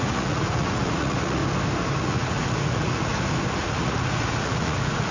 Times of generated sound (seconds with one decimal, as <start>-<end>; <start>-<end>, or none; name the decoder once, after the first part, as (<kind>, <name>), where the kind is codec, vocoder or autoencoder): 0.0-1.4 (vocoder, Vocos); 2.0-3.1; 3.6-5.1